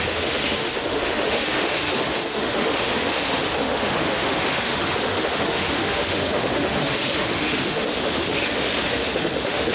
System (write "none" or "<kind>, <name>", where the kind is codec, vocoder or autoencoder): autoencoder, DAC-VAE